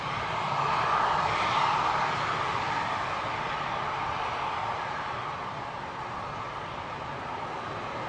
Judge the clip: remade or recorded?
recorded